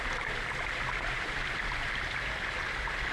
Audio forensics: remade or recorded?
recorded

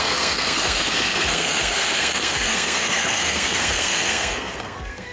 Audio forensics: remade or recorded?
remade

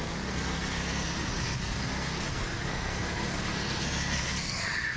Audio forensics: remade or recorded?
remade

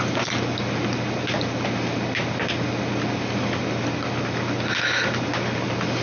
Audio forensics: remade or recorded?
recorded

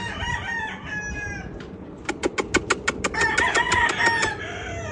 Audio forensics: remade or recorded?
recorded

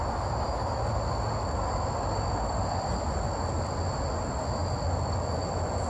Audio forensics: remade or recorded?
recorded